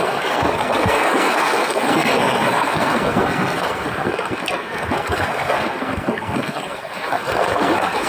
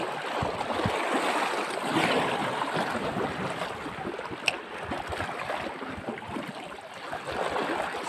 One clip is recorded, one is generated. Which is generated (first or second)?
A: first